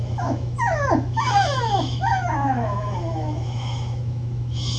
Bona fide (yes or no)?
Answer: no